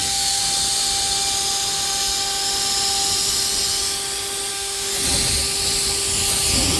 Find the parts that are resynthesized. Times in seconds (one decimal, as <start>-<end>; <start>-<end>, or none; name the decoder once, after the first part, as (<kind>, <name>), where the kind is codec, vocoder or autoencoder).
0.0-0.4 (codec, SNAC); 4.5-4.9